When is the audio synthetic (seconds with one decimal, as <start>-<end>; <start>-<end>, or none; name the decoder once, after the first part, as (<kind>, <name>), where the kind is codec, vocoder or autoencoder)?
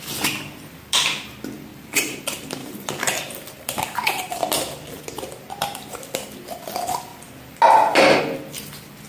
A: 1.7-2.2 (vocoder, BigVGAN v2); 2.6-5.0